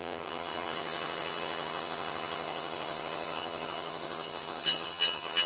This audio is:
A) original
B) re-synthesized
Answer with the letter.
B